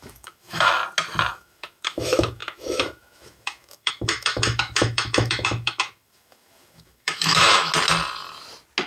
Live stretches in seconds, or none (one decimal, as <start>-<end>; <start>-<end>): 0.8-1.3; 7.7-8.9